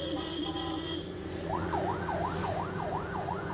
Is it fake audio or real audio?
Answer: fake